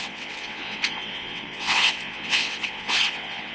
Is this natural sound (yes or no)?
no